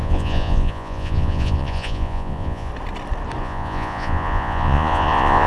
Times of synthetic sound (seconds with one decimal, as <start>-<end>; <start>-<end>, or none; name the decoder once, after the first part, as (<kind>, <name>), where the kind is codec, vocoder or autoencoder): 0.0-2.7 (vocoder, Vocos); 3.4-5.5